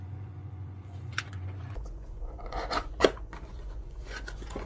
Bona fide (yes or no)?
no